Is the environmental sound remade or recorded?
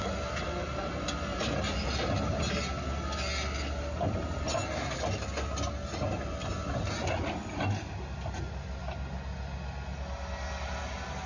recorded